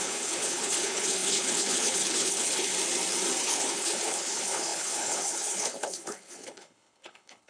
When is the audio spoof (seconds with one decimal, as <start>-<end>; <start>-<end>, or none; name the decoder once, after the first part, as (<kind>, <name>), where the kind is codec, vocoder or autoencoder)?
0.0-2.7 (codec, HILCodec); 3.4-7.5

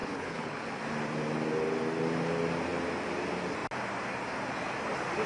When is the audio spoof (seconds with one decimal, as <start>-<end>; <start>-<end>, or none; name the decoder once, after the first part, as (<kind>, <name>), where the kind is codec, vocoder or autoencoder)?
0.0-0.6 (codec, HILCodec)

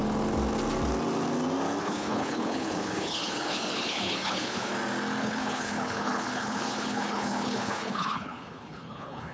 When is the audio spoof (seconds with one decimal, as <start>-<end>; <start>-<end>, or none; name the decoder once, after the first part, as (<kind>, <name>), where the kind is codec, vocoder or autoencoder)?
1.8-4.7 (codec, HILCodec); 5.2-9.3

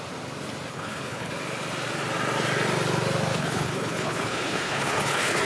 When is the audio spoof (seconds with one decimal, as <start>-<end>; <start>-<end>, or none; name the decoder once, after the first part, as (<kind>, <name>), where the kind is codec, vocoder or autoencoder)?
0.7-1.3 (codec, HILCodec); 3.3-5.4

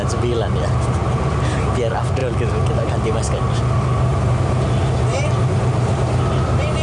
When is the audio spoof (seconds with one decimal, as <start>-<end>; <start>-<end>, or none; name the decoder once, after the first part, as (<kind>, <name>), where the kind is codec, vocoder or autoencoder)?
none

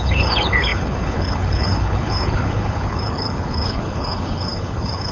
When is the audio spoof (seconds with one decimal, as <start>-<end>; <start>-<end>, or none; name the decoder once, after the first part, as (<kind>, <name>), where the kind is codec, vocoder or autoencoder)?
0.0-5.1 (codec, HILCodec)